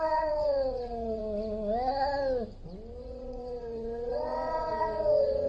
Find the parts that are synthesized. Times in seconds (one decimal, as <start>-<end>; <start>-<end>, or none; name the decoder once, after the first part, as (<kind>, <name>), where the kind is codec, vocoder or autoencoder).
0.0-1.2 (vocoder, WaveNeXt); 3.0-5.5